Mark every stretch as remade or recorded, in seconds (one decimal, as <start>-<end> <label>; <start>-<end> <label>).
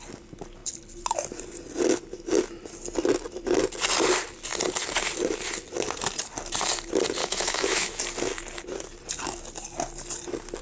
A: 0.0-7.2 recorded; 7.2-8.0 remade; 8.0-10.6 recorded